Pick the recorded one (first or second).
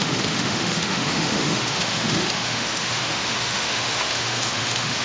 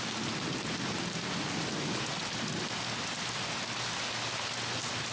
second